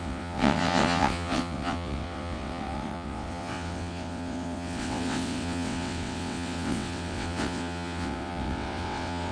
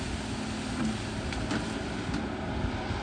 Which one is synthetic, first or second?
first